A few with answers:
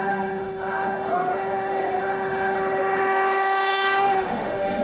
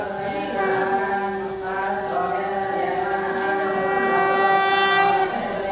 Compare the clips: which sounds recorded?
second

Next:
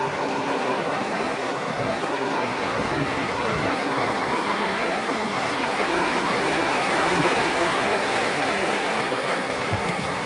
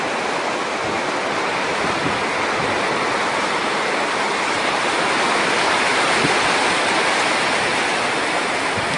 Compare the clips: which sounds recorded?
second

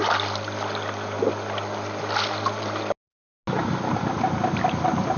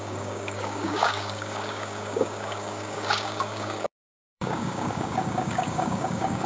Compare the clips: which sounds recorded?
first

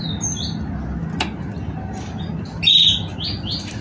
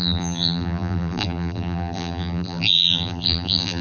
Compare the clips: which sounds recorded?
first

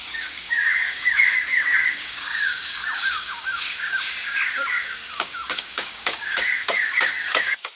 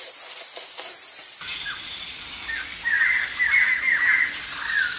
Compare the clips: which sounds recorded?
second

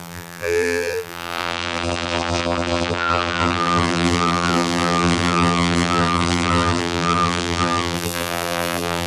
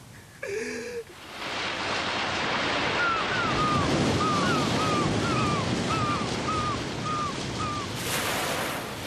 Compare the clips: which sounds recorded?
second